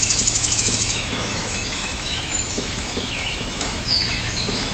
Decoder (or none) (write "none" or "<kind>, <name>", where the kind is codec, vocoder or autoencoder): autoencoder, DAC-VAE